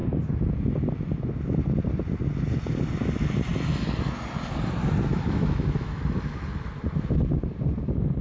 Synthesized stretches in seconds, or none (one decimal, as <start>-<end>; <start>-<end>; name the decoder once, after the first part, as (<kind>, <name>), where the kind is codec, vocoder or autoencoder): 5.1-6.0 (autoencoder, DAC-VAE)